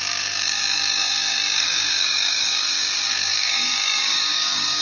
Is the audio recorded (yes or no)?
no